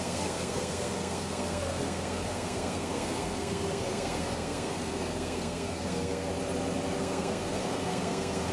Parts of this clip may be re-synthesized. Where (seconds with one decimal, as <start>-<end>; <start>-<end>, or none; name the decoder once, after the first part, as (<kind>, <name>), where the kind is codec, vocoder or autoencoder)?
0.0-6.3 (codec, SNAC); 7.0-8.5